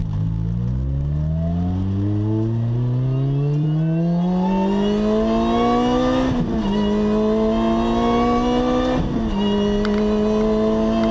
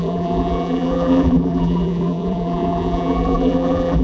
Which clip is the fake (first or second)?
second